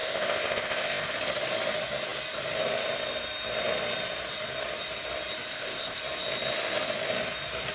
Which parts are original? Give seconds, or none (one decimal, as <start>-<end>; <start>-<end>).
1.1-5.5; 6.0-7.7